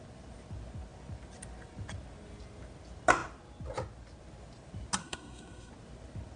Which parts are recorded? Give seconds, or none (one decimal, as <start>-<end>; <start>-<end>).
0.0-5.0; 5.7-6.4